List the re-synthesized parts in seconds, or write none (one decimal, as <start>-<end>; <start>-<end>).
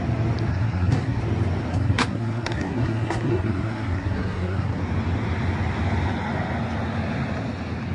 0.5-1.2; 1.7-4.8